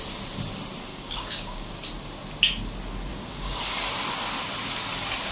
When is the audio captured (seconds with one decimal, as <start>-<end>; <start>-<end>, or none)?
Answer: 0.0-0.9; 1.7-3.1; 3.6-5.3